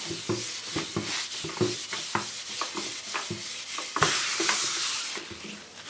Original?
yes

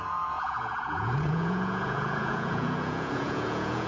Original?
no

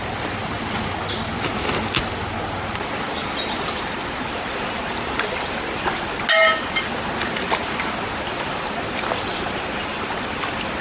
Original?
yes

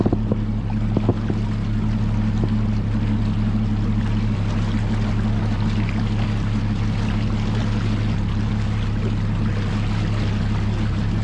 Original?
yes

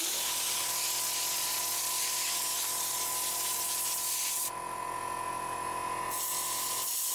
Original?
yes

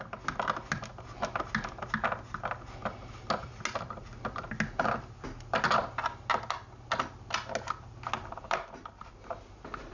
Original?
yes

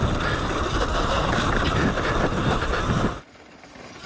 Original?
yes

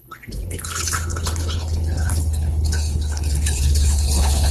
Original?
no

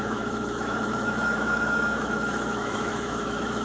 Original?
no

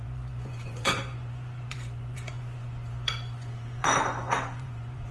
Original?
no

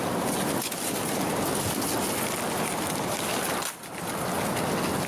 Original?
yes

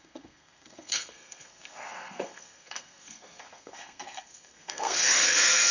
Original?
no